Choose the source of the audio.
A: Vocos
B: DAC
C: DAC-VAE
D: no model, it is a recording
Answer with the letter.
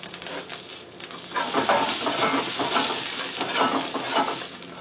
D